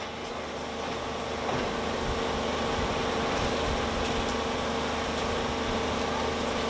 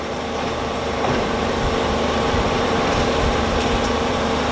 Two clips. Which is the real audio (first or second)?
first